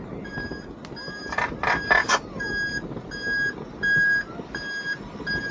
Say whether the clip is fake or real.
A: real